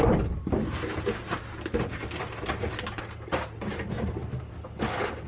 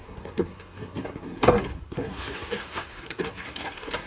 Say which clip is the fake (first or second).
second